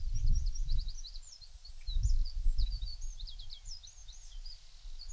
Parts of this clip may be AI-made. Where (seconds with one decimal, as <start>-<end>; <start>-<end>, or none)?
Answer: 0.6-1.9; 2.9-3.4